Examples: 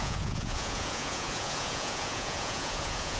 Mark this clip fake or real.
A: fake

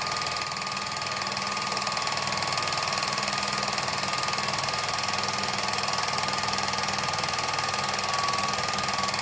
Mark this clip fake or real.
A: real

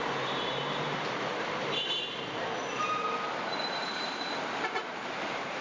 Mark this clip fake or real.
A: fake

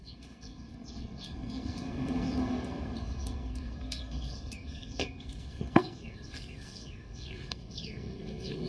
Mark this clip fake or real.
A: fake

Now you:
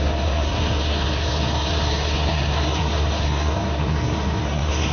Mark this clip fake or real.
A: fake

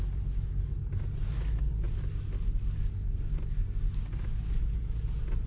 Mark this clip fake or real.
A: real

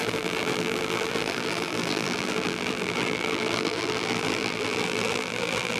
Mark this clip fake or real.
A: fake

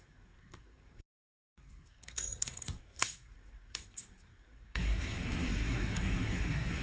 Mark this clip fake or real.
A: fake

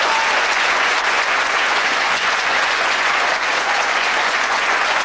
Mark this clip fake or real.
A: fake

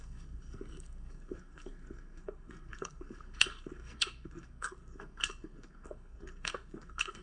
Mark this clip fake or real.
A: fake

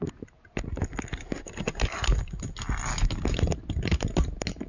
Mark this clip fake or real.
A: real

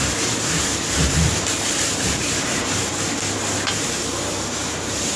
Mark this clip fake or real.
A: fake